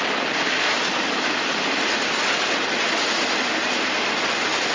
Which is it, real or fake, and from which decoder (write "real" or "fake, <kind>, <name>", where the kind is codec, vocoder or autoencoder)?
real